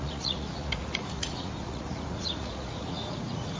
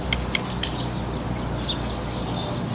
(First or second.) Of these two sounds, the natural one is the second